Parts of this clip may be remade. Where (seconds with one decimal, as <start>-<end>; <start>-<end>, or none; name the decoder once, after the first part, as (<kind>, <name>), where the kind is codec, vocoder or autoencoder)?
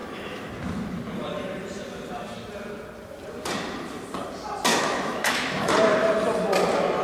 0.0-0.5 (autoencoder, DAC-VAE); 4.7-5.7